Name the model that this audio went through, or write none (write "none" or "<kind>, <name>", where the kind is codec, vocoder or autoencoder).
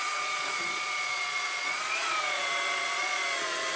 vocoder, Vocos